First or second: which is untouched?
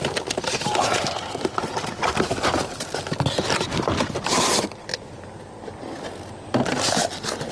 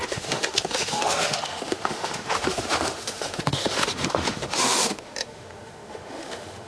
first